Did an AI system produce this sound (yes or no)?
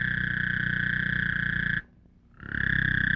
no